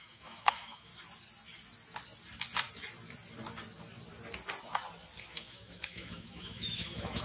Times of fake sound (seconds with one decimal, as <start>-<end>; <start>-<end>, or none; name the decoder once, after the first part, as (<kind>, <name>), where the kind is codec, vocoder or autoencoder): 0.0-0.9 (autoencoder, DAC-VAE); 5.2-7.2